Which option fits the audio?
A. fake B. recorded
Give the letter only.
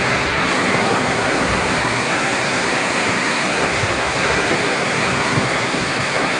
A